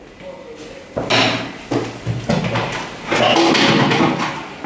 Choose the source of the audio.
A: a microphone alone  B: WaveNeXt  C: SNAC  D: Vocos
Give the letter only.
A